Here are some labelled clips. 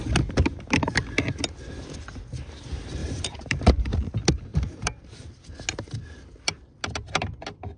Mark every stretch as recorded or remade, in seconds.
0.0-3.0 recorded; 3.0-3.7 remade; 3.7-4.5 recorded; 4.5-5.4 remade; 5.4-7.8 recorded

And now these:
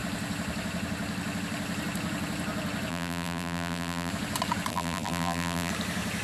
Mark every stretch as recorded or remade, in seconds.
0.0-2.9 recorded; 2.9-4.1 remade; 4.1-4.7 recorded; 4.7-5.7 remade; 5.7-6.2 recorded

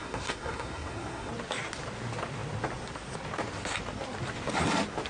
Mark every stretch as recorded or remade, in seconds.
0.0-1.3 remade; 1.3-5.1 recorded

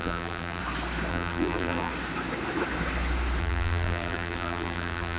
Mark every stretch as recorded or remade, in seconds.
0.0-0.6 remade; 0.6-1.1 recorded; 1.1-1.9 remade; 1.9-3.4 recorded; 3.4-5.2 remade

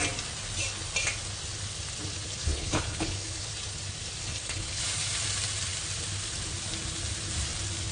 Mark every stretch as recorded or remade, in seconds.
0.0-2.4 recorded; 2.4-3.5 remade; 3.5-4.2 recorded; 4.2-4.8 remade; 4.8-7.9 recorded

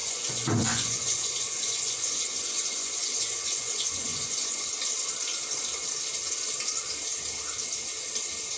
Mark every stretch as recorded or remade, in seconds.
0.0-4.6 remade; 4.6-8.6 recorded